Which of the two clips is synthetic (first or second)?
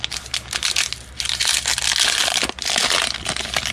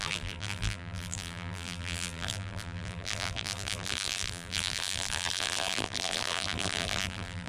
second